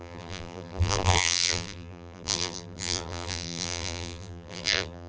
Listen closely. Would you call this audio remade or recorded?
remade